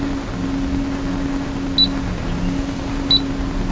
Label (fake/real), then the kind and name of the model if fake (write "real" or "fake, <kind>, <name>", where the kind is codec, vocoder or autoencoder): real